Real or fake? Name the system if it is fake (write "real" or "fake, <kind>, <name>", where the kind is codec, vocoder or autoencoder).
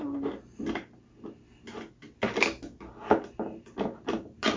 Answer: real